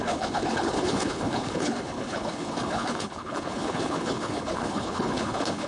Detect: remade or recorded remade